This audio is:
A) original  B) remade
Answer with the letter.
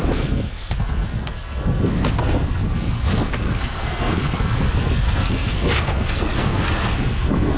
B